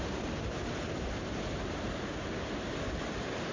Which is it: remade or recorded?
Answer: remade